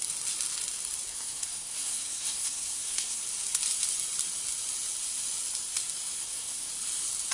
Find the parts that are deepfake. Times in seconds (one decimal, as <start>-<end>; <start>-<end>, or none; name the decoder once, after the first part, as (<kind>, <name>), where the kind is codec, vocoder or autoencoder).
1.1-3.2 (codec, SNAC); 6.2-6.7